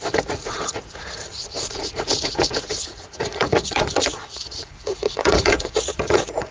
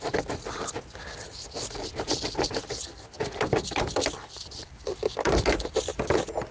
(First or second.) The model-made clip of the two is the first